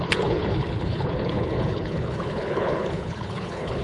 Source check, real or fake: fake